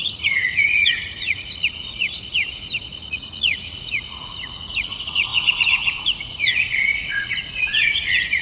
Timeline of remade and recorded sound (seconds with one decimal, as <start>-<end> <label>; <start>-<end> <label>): 0.0-8.4 remade